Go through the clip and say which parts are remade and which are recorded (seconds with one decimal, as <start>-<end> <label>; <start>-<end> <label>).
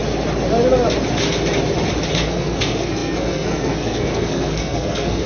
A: 0.0-2.1 recorded; 2.1-5.3 remade